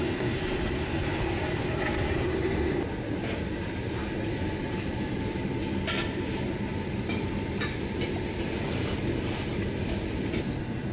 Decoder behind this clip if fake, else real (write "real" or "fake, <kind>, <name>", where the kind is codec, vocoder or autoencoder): real